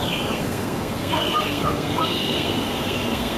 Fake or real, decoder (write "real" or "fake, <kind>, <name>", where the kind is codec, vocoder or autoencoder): fake, codec, SNAC